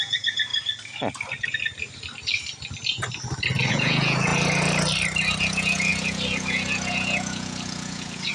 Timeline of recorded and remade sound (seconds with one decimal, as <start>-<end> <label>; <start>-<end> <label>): 0.0-0.5 remade; 0.5-3.7 recorded; 3.7-4.3 remade; 4.3-5.4 recorded; 5.4-8.3 remade